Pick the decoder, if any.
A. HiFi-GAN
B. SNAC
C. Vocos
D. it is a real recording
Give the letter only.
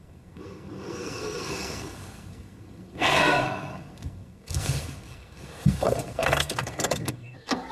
B